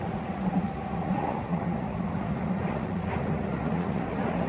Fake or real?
fake